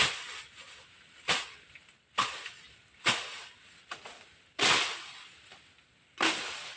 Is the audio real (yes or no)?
yes